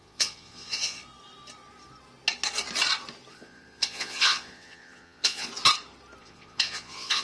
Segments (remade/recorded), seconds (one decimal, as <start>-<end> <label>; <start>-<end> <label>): 0.0-1.0 remade; 1.0-3.3 recorded; 3.3-5.5 remade; 5.5-6.2 recorded; 6.2-7.2 remade